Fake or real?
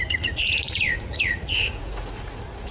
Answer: fake